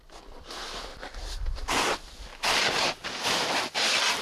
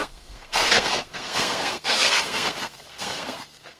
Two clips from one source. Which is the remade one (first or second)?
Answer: second